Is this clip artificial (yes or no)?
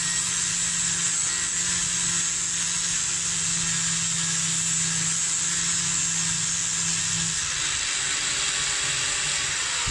no